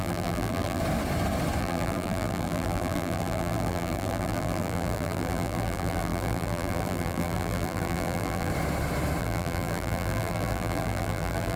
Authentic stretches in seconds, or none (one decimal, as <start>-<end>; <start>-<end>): 0.8-1.6; 8.5-9.2